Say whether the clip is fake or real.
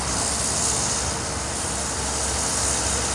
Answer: real